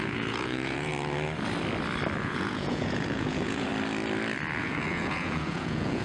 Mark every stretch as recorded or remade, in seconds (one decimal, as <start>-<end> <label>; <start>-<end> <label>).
0.0-0.9 remade; 0.9-2.2 recorded; 2.2-3.7 remade; 3.7-4.6 recorded; 4.6-6.0 remade